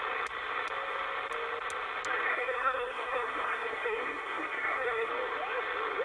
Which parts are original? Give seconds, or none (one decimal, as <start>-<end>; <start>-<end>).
0.0-2.3; 5.1-6.0